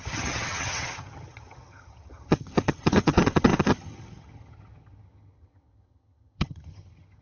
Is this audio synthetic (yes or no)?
yes